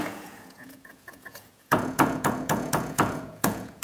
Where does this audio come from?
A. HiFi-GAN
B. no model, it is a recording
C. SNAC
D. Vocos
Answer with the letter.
D